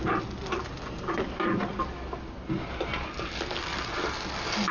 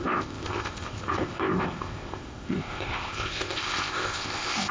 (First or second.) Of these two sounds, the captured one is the first